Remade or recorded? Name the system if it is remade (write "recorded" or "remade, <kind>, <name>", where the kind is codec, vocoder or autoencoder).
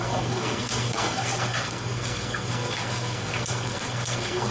remade, codec, SNAC